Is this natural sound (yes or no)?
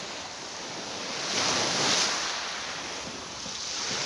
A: yes